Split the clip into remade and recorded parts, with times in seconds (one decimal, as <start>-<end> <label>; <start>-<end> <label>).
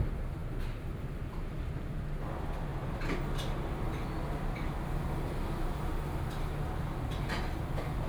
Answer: 0.0-8.1 recorded